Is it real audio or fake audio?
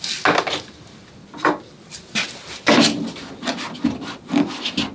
real